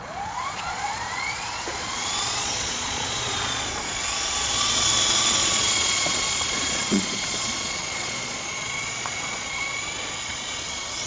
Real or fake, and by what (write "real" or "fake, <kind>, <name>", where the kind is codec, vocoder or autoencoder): fake, vocoder, Vocos